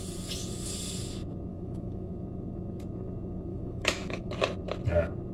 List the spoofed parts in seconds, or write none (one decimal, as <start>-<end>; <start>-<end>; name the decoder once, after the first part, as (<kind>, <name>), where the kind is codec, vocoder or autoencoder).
1.5-2.1 (autoencoder, DAC-VAE); 3.5-4.3

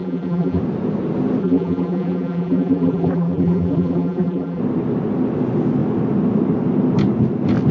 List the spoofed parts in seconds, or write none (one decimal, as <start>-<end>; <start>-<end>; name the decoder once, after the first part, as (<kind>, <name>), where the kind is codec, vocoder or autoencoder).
0.0-0.6 (vocoder, BigVGAN v2); 1.4-4.6

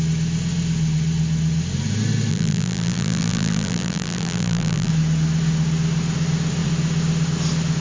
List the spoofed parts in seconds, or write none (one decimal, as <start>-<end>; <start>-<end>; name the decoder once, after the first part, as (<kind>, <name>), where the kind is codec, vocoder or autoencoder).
2.3-4.9 (vocoder, BigVGAN v2)

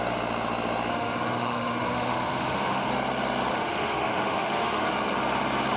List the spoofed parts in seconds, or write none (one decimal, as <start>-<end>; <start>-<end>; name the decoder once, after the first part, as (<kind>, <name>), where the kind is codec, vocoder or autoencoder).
0.9-2.9 (autoencoder, DAC-VAE); 3.5-4.9

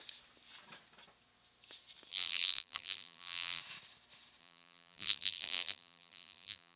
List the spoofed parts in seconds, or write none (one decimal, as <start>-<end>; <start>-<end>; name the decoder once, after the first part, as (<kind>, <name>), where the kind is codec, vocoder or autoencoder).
2.1-3.6 (vocoder, BigVGAN v2); 4.4-6.8

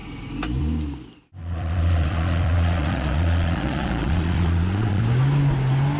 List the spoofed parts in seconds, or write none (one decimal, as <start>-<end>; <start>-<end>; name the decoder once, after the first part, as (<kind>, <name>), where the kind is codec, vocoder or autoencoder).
1.4-5.0 (vocoder, Vocos)

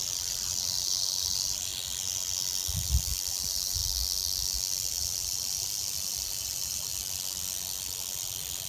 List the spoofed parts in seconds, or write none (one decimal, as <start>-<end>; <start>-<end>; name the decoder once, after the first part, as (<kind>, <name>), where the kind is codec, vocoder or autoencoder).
0.0-1.7 (vocoder, BigVGAN v2); 3.3-3.8; 4.9-6.9